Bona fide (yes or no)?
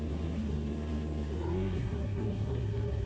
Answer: no